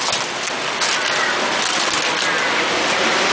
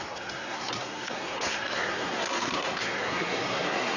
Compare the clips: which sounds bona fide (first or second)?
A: first